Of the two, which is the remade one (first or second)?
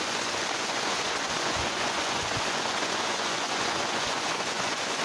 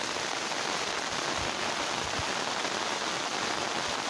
first